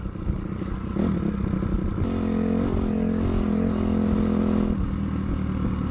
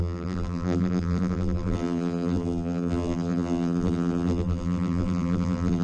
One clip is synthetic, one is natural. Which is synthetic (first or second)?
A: second